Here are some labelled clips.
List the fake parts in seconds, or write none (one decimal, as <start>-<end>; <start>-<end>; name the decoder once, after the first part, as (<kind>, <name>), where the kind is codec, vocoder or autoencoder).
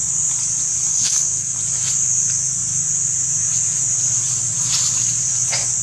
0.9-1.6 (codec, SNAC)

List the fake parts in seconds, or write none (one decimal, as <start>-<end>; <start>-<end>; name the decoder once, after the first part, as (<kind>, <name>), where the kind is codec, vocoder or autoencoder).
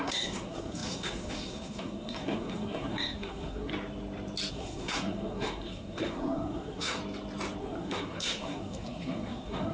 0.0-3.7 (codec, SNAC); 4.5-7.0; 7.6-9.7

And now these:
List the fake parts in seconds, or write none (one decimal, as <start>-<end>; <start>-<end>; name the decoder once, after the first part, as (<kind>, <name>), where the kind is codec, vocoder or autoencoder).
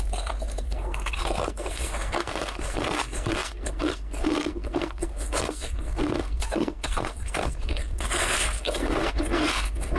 0.0-10.0 (codec, SNAC)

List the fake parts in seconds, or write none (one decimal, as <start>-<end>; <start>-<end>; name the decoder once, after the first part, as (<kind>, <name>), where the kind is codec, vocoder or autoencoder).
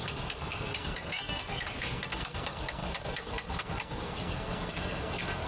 0.0-5.5 (codec, SNAC)